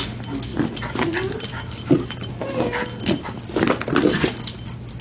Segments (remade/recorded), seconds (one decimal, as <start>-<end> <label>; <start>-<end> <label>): 0.0-5.0 recorded